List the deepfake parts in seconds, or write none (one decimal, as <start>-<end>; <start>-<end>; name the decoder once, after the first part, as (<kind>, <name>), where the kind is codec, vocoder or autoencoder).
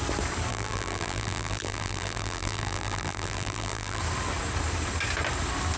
0.5-4.0 (vocoder, BigVGAN v2)